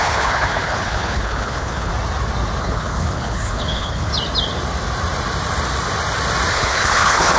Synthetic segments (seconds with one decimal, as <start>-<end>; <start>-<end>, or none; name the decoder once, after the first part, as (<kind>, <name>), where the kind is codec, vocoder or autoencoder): 0.0-1.9 (codec, HILCodec); 2.6-4.1; 6.5-7.4